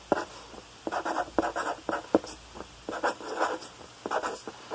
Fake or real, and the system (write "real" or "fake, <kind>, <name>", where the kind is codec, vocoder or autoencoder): real